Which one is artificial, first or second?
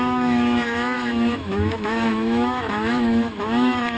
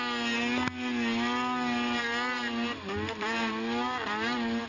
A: first